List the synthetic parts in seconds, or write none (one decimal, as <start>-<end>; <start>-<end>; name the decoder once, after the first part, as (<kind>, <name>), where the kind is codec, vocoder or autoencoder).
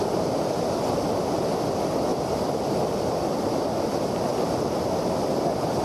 none